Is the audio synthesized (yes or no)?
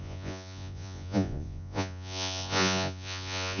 yes